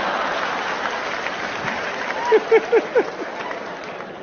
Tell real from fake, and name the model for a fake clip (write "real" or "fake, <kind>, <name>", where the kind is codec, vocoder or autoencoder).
real